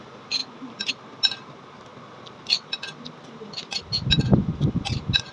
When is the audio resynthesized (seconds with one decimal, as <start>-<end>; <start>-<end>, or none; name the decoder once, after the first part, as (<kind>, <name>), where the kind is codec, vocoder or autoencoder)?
none

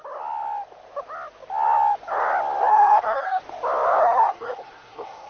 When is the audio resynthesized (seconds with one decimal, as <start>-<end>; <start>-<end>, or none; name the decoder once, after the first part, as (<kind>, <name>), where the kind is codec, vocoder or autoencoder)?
2.7-3.4 (codec, SNAC); 4.0-5.3

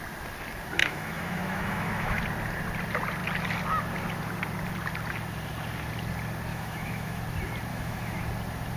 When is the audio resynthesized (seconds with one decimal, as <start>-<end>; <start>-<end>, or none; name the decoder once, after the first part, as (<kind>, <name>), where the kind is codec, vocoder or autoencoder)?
0.8-2.2 (autoencoder, DAC-VAE); 6.5-7.2; 7.7-8.2

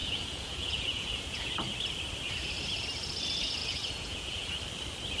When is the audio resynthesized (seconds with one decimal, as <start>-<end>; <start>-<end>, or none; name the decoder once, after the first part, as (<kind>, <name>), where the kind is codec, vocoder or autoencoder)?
0.0-1.5 (vocoder, Vocos); 3.6-4.5

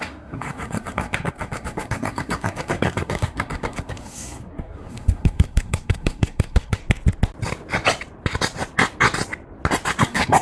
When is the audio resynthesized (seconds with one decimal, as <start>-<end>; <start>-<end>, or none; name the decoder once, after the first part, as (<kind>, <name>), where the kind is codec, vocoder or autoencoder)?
0.0-6.8 (codec, SNAC); 10.0-10.4

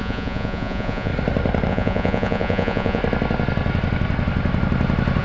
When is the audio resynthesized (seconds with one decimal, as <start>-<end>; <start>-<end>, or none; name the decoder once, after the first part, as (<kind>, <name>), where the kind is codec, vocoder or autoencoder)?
0.0-1.1 (vocoder, Vocos); 1.7-3.0